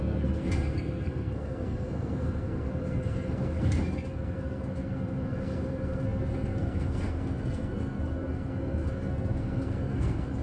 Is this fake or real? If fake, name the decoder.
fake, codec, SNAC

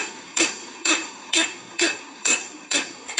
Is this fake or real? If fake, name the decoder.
fake, codec, SNAC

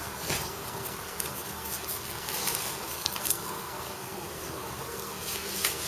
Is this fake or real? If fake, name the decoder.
fake, codec, SNAC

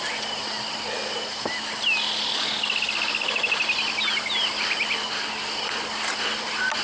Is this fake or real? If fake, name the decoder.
real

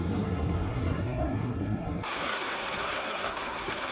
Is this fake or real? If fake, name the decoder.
fake, codec, SNAC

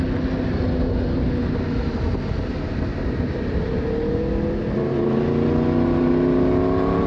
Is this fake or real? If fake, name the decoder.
real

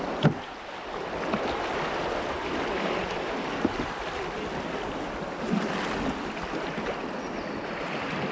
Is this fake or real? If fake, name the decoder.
real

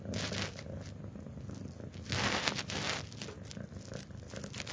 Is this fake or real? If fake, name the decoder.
real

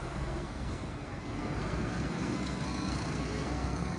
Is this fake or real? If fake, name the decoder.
fake, codec, SNAC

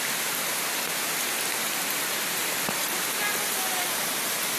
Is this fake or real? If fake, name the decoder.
real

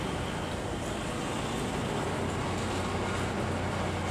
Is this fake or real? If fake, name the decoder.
real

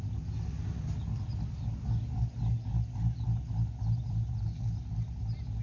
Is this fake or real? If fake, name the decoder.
real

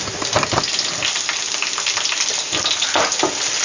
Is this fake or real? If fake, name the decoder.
real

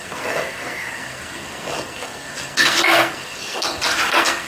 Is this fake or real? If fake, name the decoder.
fake, codec, SNAC